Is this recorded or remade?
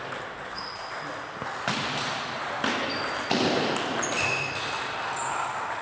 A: recorded